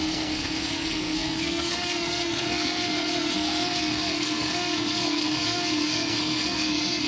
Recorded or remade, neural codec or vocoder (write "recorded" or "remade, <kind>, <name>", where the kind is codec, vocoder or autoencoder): remade, codec, SNAC